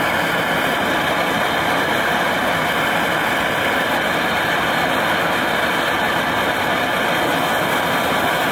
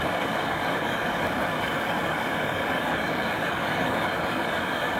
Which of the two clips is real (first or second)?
first